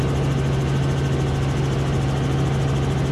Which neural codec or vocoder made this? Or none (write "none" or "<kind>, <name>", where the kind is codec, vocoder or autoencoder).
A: none